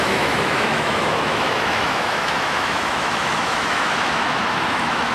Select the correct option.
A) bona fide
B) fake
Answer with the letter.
B